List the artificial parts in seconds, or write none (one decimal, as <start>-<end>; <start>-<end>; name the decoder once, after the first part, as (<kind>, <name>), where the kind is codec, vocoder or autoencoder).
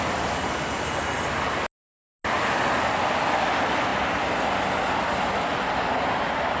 none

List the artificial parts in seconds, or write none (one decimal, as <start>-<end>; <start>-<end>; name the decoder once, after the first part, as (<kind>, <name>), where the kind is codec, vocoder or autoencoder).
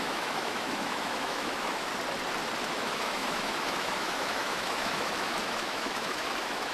0.0-1.9 (autoencoder, DAC-VAE); 2.6-6.7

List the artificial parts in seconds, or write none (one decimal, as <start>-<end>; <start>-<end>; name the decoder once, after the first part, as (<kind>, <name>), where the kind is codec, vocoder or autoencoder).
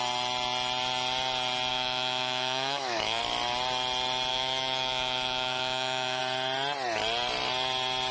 1.7-3.2 (autoencoder, DAC-VAE); 4.3-6.2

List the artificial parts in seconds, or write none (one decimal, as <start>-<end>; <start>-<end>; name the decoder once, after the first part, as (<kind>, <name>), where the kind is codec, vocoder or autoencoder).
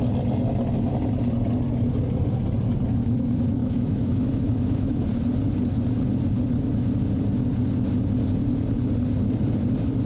3.6-5.0 (autoencoder, DAC-VAE)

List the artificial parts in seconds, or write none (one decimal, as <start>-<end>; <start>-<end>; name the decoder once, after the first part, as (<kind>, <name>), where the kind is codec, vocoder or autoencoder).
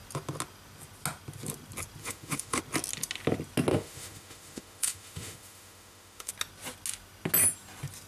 2.0-2.6 (autoencoder, DAC-VAE); 3.7-6.3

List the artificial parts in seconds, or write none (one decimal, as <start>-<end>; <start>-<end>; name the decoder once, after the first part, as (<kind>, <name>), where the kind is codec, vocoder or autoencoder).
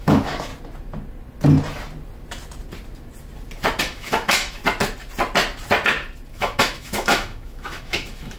0.0-0.5 (autoencoder, DAC-VAE); 3.8-4.6; 6.3-8.4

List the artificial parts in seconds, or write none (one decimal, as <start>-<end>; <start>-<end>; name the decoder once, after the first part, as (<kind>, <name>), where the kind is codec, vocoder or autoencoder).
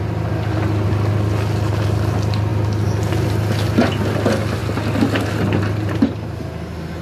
none